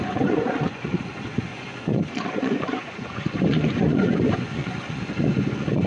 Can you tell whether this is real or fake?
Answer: fake